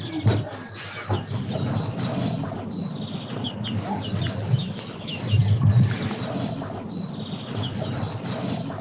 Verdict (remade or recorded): recorded